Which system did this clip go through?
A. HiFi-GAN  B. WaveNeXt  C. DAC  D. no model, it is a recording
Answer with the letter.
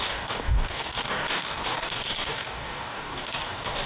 C